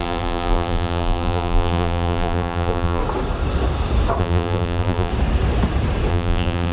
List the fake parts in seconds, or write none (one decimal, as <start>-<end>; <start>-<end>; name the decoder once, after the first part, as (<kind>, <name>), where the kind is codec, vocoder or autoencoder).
0.0-3.0 (vocoder, BigVGAN v2); 4.2-5.1; 6.1-6.7